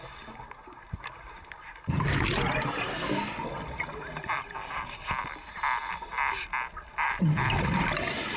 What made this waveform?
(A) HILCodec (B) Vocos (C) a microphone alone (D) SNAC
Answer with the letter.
C